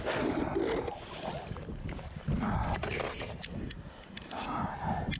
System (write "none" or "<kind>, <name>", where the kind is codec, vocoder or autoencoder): none